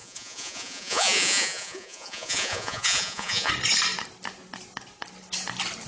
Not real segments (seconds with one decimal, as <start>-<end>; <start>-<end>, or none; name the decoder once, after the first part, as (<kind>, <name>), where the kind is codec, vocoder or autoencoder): 0.0-3.5 (vocoder, Vocos)